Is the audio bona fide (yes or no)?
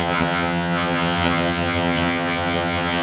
no